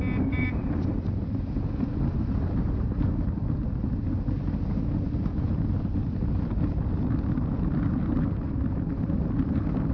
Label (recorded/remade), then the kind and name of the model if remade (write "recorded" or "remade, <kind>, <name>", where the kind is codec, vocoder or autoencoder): recorded